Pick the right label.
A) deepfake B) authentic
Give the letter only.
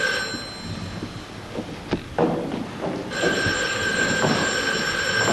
B